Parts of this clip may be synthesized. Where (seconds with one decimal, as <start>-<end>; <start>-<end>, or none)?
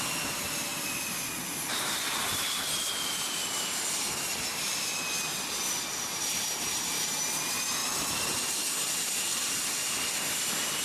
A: 0.7-2.3; 5.9-7.1